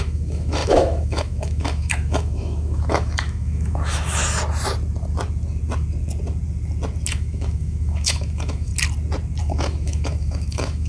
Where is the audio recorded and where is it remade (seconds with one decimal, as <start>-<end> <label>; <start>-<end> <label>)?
0.0-4.2 remade; 4.2-7.1 recorded; 7.1-8.7 remade; 8.7-9.4 recorded; 9.4-10.9 remade